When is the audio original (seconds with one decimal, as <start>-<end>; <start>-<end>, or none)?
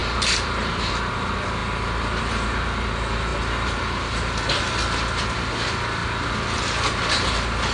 0.9-7.7